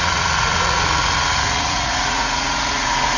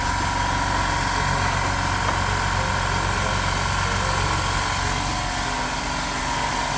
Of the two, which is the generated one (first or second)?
first